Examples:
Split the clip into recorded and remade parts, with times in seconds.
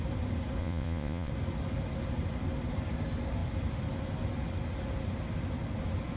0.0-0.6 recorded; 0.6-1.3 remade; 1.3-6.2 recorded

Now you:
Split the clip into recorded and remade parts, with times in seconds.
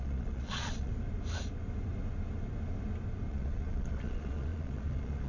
0.0-0.9 remade; 0.9-3.3 recorded; 3.3-5.3 remade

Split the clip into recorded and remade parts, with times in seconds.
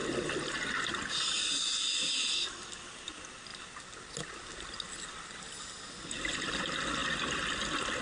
0.0-8.0 recorded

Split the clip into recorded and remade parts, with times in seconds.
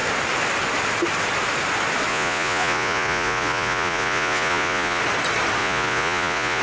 0.0-2.1 recorded; 2.1-5.0 remade; 5.0-5.6 recorded; 5.6-6.6 remade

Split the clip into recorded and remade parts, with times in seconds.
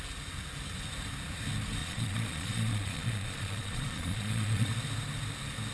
0.0-1.8 recorded; 1.8-4.7 remade; 4.7-5.7 recorded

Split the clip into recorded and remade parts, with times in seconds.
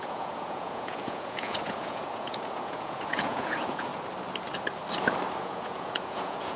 0.0-3.9 remade; 3.9-5.4 recorded; 5.4-6.6 remade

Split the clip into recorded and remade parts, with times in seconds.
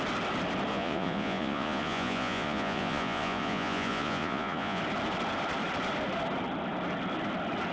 0.0-0.7 recorded; 0.7-4.8 remade; 4.8-7.7 recorded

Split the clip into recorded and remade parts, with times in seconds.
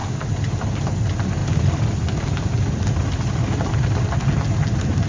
0.0-5.1 recorded